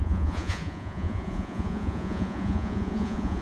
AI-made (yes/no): yes